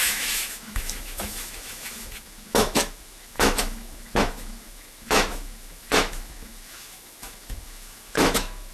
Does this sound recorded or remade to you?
remade